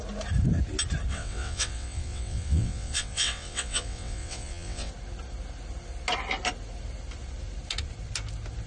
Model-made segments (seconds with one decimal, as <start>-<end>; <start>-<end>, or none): 1.1-4.9